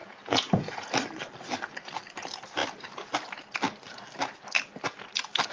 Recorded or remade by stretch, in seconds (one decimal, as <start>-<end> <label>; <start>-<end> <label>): 0.0-0.9 remade; 0.9-5.5 recorded